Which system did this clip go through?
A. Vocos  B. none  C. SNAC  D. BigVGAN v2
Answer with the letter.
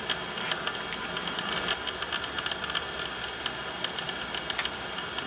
B